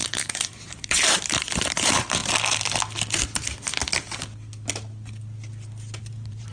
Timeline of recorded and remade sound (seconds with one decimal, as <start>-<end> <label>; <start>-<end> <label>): 0.0-2.2 remade; 2.2-6.0 recorded; 6.0-6.5 remade